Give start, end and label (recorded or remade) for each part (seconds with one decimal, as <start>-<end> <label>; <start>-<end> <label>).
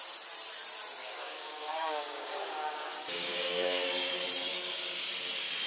0.0-1.0 recorded; 1.0-4.1 remade; 4.1-4.5 recorded; 4.5-5.1 remade; 5.1-5.7 recorded